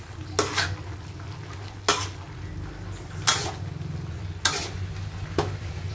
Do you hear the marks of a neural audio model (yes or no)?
no